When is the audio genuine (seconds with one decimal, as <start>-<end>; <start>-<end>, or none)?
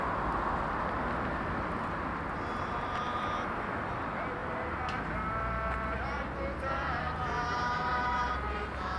0.0-9.0